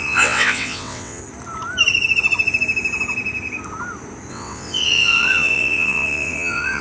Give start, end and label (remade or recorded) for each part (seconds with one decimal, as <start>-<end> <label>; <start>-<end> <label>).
0.0-1.2 remade; 1.2-4.3 recorded; 4.3-6.8 remade